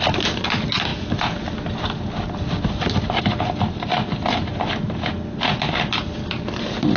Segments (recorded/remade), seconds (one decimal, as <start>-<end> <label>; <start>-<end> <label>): 0.0-0.9 remade; 0.9-3.2 recorded; 3.2-4.5 remade; 4.5-5.6 recorded; 5.6-7.0 remade